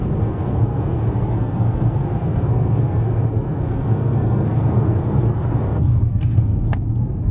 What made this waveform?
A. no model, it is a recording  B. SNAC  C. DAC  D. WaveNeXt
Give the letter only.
B